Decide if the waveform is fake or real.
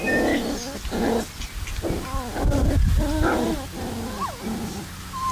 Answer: real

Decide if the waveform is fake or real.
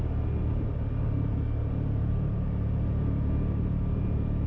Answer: real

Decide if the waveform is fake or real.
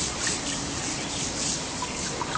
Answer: real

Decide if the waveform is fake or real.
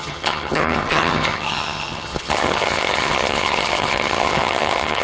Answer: fake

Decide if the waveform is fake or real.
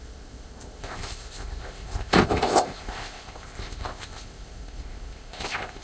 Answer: fake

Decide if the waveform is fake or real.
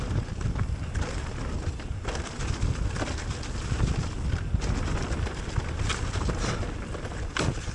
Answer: real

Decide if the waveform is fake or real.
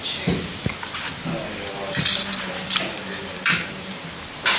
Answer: real